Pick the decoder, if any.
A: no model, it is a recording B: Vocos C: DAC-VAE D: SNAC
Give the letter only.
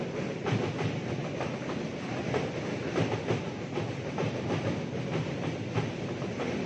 A